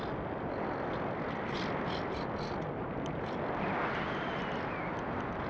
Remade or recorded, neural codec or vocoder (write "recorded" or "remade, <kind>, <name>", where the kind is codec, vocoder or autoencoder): recorded